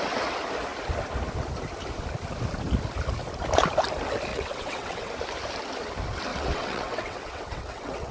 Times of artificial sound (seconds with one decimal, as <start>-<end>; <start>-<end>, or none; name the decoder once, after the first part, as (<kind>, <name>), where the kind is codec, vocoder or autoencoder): 4.3-5.1 (vocoder, WaveNeXt); 6.3-8.1